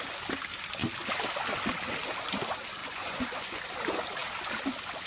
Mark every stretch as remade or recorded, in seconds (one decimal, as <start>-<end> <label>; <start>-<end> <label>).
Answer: 0.0-2.8 recorded; 2.8-3.6 remade; 3.6-5.1 recorded

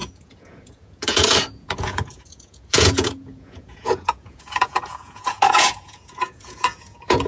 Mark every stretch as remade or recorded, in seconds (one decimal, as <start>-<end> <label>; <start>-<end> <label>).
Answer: 0.0-7.3 remade

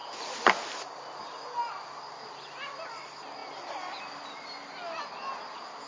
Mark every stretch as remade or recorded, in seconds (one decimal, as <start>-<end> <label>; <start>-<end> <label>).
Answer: 0.0-5.9 recorded

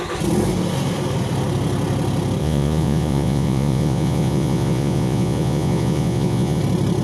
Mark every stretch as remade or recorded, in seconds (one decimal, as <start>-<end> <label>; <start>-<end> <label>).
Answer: 0.0-2.4 recorded; 2.4-6.6 remade; 6.6-7.0 recorded

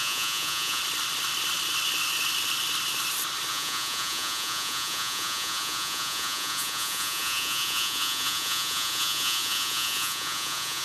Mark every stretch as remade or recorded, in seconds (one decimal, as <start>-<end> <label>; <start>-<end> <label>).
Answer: 0.0-0.8 remade; 0.8-3.5 recorded; 3.5-10.8 remade

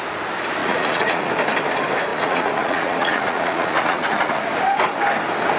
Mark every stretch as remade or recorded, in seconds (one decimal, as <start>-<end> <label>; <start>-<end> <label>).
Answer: 0.0-0.6 recorded; 0.6-1.3 remade; 1.3-2.1 recorded; 2.1-4.4 remade; 4.4-5.6 recorded